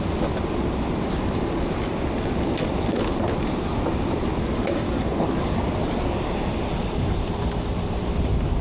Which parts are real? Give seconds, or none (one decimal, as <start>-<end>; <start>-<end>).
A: 0.0-8.6